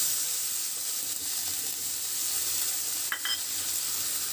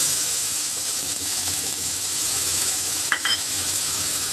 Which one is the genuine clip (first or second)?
first